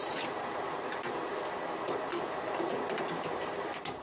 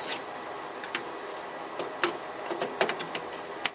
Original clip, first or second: second